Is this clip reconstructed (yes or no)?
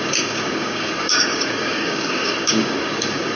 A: yes